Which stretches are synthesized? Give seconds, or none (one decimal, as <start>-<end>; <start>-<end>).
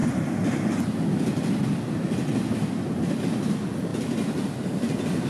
none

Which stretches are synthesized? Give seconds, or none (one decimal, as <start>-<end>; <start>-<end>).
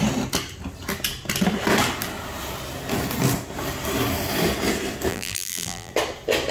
5.1-5.9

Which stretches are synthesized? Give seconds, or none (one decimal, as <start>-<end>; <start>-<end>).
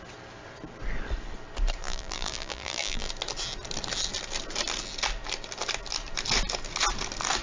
1.8-3.1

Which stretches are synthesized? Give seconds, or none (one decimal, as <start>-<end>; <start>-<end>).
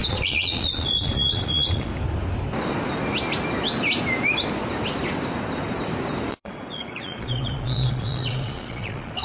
0.0-1.9; 6.3-9.2